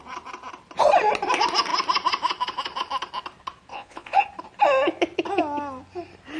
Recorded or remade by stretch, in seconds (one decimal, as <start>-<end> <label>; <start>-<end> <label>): 0.0-3.7 recorded; 3.7-4.2 remade; 4.2-6.4 recorded